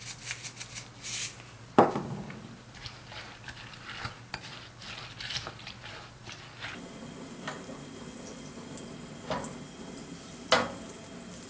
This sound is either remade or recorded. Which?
recorded